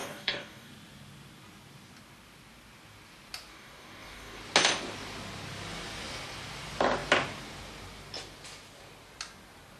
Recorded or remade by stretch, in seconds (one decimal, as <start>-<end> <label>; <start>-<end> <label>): 0.0-0.7 remade; 0.7-3.5 recorded; 3.5-4.4 remade; 4.4-9.8 recorded